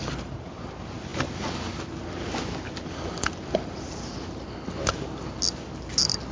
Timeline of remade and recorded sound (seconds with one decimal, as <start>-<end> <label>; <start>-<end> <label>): 0.0-6.3 recorded